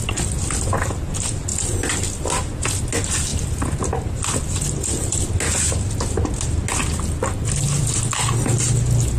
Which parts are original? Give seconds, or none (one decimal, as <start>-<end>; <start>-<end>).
0.0-9.2